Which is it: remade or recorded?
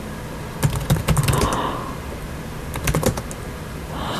recorded